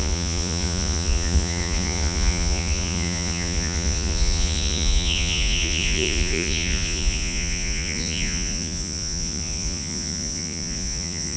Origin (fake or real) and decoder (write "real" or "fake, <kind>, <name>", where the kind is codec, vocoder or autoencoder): fake, vocoder, Vocos